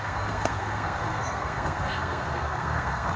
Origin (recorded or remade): remade